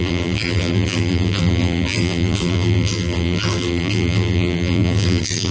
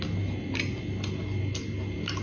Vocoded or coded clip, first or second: first